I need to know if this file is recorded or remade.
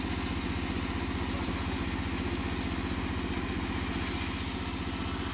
recorded